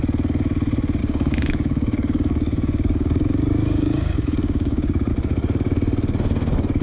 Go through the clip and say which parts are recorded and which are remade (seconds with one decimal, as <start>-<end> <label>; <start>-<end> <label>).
0.0-1.0 recorded; 1.0-5.1 remade; 5.1-6.8 recorded